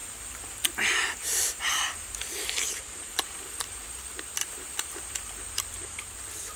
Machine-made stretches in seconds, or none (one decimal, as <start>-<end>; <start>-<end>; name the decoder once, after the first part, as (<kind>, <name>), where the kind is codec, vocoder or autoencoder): 0.0-4.0 (vocoder, BigVGAN v2); 4.4-6.0